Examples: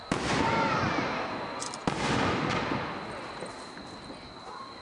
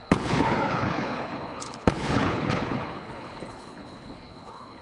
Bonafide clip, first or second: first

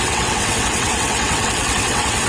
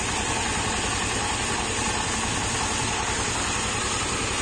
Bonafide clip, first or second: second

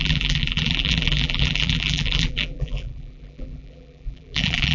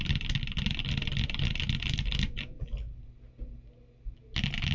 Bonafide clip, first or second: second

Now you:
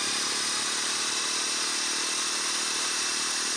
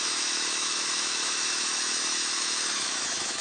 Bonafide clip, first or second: first